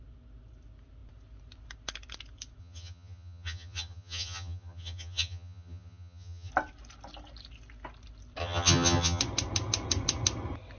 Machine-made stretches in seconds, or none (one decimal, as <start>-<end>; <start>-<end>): 2.6-6.5; 8.4-9.2